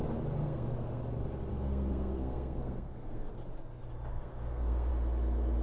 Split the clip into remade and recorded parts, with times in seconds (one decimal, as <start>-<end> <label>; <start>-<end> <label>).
0.0-0.4 recorded; 0.4-1.0 remade; 1.0-1.5 recorded; 1.5-3.3 remade; 3.3-4.1 recorded; 4.1-4.9 remade; 4.9-5.6 recorded

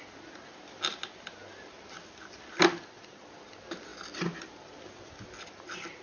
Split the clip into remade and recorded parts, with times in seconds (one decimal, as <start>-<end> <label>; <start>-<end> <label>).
0.0-6.0 recorded

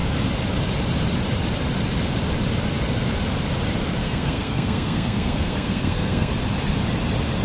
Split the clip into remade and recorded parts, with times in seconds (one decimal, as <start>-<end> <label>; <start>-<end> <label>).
0.0-4.0 recorded; 4.0-6.3 remade; 6.3-7.4 recorded

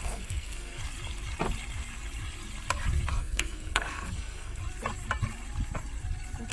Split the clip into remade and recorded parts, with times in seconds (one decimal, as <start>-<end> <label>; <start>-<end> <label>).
0.0-0.8 remade; 0.8-3.1 recorded; 3.1-4.6 remade; 4.6-6.5 recorded